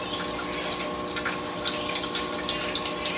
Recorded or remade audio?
recorded